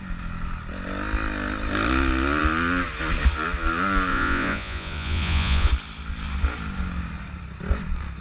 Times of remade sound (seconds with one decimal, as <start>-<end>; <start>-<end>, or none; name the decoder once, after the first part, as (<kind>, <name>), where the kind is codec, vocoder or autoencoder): 4.1-5.7 (vocoder, Vocos)